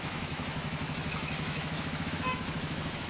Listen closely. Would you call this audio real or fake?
fake